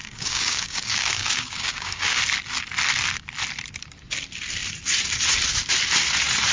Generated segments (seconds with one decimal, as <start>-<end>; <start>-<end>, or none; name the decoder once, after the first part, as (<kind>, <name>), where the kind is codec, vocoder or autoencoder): 0.0-2.2 (codec, DAC)

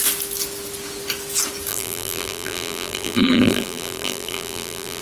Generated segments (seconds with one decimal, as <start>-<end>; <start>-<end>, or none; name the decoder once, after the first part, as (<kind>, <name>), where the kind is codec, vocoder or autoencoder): 1.7-5.0 (vocoder, BigVGAN v2)

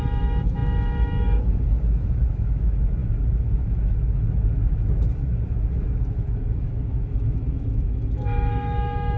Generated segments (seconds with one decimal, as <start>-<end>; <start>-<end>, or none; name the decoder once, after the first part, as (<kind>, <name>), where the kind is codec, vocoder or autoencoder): 0.0-9.2 (autoencoder, DAC-VAE)

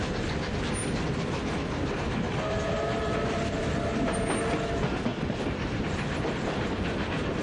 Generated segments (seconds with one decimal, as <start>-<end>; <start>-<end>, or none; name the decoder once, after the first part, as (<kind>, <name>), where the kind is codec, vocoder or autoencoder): 5.1-7.4 (vocoder, BigVGAN v2)